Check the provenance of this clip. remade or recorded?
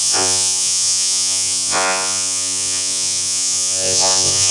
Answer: remade